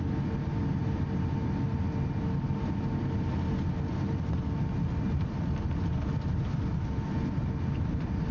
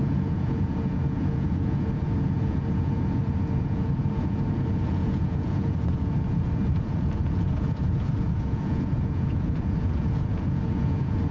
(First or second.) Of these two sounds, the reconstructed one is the second